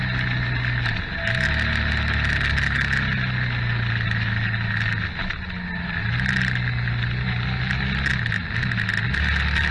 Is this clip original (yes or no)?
yes